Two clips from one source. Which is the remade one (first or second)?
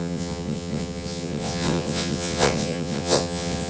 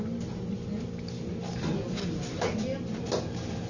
first